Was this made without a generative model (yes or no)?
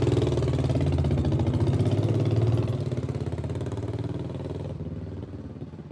yes